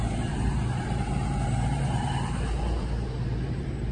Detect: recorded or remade remade